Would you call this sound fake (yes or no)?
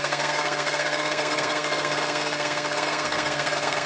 yes